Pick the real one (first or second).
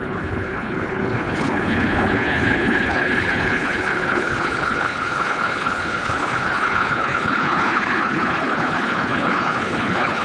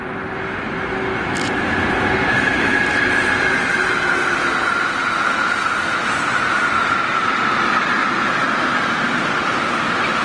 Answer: second